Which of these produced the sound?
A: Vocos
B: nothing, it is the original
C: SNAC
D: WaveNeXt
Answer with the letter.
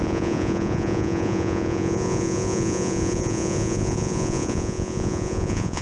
A